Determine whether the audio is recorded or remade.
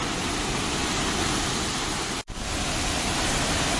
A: recorded